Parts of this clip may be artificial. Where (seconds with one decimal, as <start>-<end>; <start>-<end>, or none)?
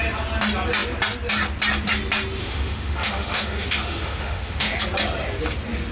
2.4-4.8